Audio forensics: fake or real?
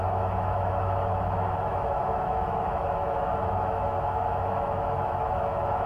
fake